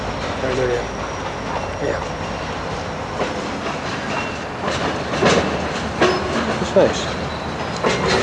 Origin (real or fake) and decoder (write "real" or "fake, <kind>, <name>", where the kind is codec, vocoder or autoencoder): real